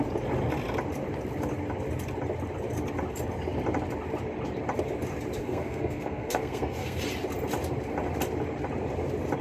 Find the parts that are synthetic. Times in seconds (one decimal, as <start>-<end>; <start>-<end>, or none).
5.4-7.0